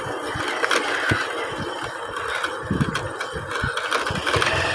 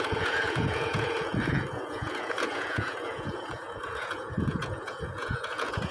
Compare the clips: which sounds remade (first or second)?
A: second